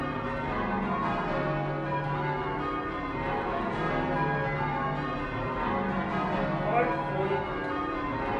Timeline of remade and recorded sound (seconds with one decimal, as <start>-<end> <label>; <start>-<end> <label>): 0.0-8.4 recorded

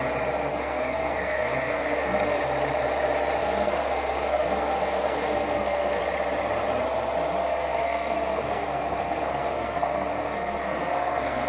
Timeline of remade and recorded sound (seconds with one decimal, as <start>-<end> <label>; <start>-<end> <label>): 0.0-0.5 recorded; 0.5-2.4 remade; 2.4-3.4 recorded; 3.4-6.0 remade; 6.0-7.5 recorded; 7.5-11.5 remade

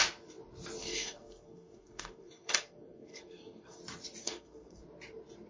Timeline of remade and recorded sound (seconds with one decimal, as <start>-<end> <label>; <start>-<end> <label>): 0.0-0.8 recorded; 0.8-3.8 remade; 3.8-4.2 recorded; 4.2-4.8 remade; 4.8-5.5 recorded